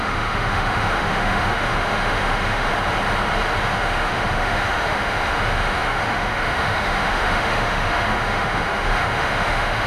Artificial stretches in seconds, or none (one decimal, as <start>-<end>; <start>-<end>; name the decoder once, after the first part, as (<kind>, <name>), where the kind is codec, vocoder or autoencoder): 0.0-2.7 (autoencoder, DAC-VAE); 3.6-9.9